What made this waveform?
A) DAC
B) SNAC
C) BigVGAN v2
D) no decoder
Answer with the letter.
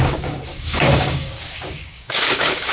A